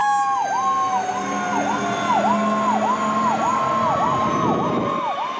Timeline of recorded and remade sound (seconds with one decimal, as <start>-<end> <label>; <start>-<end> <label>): 0.0-5.4 recorded